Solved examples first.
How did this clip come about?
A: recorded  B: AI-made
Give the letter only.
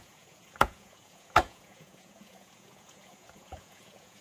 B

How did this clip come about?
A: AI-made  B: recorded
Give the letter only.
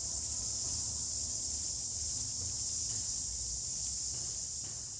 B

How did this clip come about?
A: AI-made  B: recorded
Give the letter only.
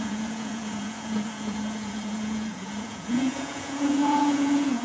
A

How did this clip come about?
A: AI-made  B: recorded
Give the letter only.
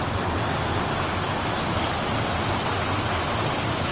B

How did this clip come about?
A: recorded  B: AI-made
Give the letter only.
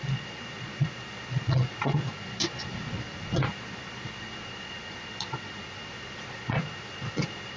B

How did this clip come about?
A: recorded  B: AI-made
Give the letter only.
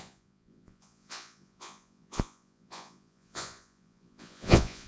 B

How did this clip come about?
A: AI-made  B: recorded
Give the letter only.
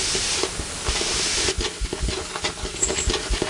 B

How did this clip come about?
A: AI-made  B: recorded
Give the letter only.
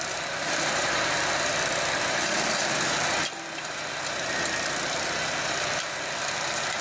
B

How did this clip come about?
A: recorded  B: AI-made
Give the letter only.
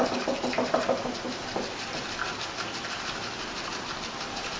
A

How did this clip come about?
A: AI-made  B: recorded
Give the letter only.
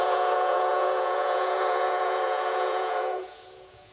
A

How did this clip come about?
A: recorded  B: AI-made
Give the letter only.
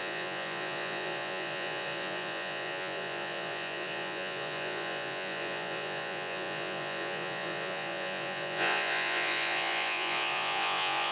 B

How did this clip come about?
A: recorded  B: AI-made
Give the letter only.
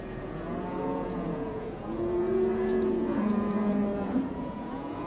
B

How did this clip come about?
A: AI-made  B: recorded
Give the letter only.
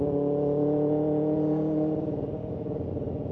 B